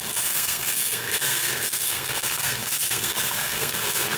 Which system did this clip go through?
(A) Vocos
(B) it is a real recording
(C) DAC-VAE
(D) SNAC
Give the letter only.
D